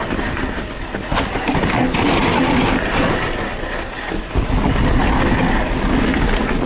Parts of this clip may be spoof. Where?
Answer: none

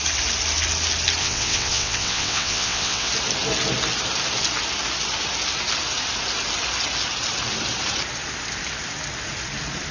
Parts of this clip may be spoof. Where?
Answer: 1.2-3.1

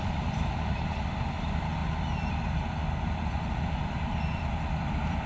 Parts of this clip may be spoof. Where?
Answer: 0.0-1.8; 3.4-5.3

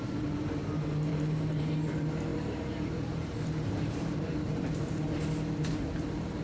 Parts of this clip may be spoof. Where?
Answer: 1.1-1.6; 2.3-4.9

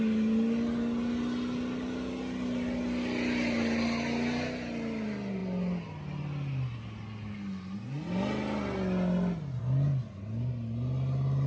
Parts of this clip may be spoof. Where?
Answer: none